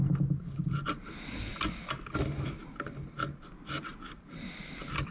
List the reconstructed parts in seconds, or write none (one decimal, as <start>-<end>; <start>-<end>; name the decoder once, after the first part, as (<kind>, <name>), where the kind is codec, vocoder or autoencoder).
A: none

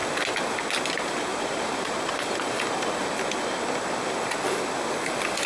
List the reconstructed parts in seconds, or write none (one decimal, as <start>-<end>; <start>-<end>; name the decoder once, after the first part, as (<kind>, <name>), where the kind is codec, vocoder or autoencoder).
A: 1.3-2.3 (vocoder, BigVGAN v2)

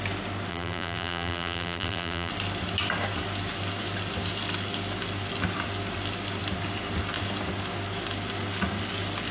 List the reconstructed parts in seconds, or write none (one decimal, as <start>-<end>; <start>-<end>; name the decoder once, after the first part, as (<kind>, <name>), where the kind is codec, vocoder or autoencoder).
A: 0.5-2.3 (vocoder, BigVGAN v2)

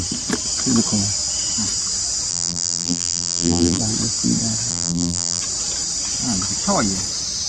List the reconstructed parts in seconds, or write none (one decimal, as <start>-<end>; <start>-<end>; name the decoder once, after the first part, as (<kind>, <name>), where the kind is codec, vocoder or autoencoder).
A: 2.3-3.8 (vocoder, BigVGAN v2); 4.7-5.4

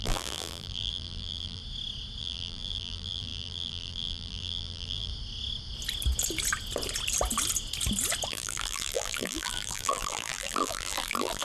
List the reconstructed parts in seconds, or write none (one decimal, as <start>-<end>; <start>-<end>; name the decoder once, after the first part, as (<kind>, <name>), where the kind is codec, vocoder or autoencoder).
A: 0.0-1.6 (vocoder, BigVGAN v2); 2.2-5.1; 8.3-11.4

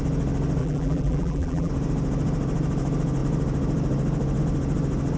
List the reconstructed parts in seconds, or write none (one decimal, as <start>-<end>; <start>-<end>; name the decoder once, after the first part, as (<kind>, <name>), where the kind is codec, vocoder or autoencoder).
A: 0.6-1.7 (vocoder, BigVGAN v2)

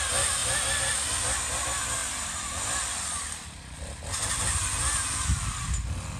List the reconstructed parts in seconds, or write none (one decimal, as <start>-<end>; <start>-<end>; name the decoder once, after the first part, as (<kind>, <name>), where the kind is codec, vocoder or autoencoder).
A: 0.4-1.4 (vocoder, BigVGAN v2); 2.0-5.7